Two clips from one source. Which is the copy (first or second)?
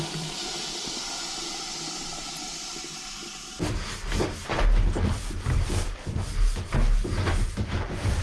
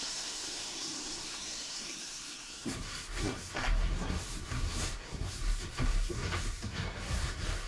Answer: second